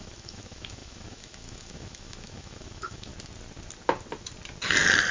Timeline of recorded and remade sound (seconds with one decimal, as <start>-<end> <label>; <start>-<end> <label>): 0.0-3.1 remade; 3.1-5.1 recorded